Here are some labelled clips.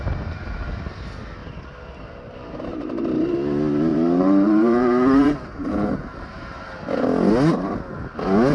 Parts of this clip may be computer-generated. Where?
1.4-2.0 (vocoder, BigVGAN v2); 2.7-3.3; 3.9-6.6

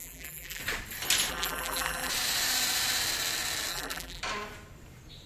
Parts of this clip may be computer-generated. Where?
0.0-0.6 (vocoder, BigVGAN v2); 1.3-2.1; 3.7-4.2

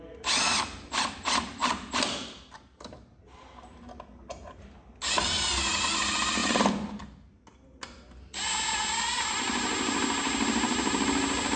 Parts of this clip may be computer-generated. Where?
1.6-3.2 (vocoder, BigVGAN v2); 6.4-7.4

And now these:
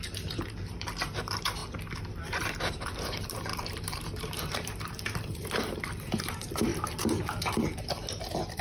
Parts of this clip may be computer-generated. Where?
0.0-1.6 (vocoder, BigVGAN v2); 2.4-6.7

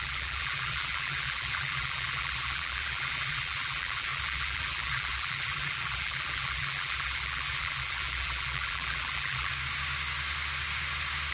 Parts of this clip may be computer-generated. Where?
0.0-9.5 (vocoder, BigVGAN v2)